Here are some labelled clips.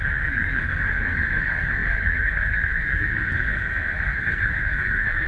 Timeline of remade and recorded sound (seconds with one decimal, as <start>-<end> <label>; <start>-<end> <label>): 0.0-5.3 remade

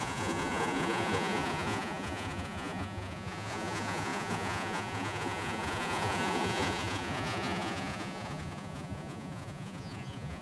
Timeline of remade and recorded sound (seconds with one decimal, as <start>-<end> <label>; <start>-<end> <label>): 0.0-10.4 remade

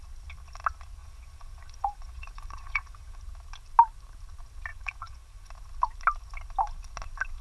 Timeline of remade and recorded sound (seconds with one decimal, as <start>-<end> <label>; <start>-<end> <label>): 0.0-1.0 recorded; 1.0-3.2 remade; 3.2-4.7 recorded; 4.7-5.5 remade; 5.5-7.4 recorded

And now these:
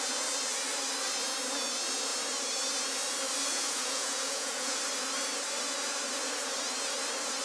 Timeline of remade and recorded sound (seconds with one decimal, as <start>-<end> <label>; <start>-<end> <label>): 0.0-3.5 recorded; 3.5-4.8 remade; 4.8-7.4 recorded

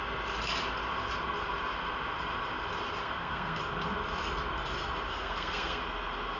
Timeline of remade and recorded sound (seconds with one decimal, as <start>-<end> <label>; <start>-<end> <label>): 0.0-3.0 recorded; 3.0-3.6 remade; 3.6-5.1 recorded; 5.1-5.8 remade; 5.8-6.4 recorded

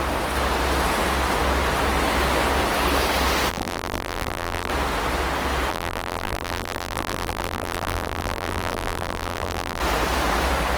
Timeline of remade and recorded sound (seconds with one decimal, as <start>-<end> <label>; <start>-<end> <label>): 0.0-3.5 recorded; 3.5-4.7 remade; 4.7-5.7 recorded; 5.7-9.8 remade; 9.8-10.8 recorded

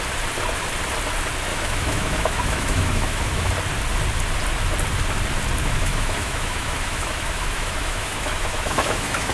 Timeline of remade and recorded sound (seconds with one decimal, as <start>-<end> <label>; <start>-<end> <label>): 0.0-1.5 recorded; 1.5-3.5 remade; 3.5-5.6 recorded; 5.6-9.3 remade

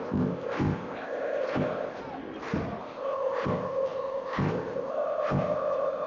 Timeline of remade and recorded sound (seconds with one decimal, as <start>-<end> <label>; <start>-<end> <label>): 0.0-2.0 remade; 2.0-2.8 recorded; 2.8-6.1 remade